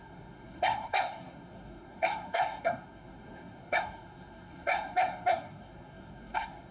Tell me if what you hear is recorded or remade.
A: remade